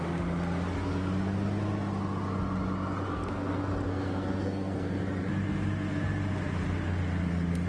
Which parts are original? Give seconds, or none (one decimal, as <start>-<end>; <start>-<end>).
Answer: 0.0-3.1; 5.0-7.7